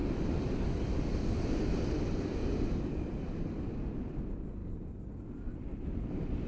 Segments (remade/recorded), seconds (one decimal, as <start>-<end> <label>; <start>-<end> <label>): 0.0-6.5 recorded